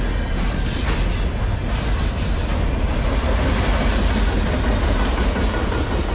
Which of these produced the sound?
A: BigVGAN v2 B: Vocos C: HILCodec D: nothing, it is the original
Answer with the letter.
D